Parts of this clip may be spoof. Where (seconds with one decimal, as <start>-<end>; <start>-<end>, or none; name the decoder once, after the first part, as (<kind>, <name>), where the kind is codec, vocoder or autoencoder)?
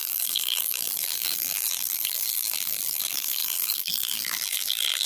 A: 0.0-5.1 (vocoder, BigVGAN v2)